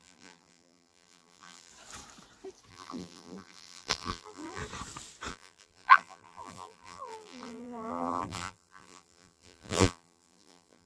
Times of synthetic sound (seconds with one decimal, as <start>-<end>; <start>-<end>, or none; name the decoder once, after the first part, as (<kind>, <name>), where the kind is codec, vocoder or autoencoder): 0.0-1.7 (vocoder, BigVGAN v2); 2.7-4.6; 5.3-10.9